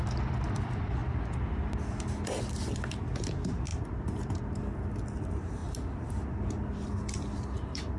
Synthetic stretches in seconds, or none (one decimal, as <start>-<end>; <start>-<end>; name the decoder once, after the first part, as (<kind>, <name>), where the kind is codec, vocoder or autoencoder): 0.0-1.0 (vocoder, BigVGAN v2); 2.7-5.6; 6.7-8.0

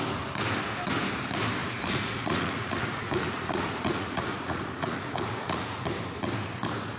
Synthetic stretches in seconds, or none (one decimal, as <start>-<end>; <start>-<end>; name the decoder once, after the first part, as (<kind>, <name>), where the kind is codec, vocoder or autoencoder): 1.6-5.8 (vocoder, Vocos)

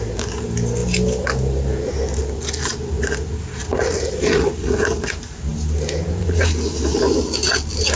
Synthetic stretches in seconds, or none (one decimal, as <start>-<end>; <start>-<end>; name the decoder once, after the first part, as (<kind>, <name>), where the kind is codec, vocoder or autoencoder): none

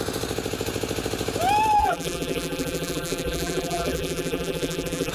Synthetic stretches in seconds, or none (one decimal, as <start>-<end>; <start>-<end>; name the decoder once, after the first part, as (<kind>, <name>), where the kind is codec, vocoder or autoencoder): 1.8-5.1 (vocoder, BigVGAN v2)

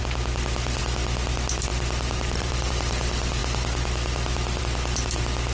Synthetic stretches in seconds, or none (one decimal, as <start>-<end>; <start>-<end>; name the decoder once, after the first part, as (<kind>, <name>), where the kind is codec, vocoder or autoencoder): 1.7-2.7 (vocoder, BigVGAN v2)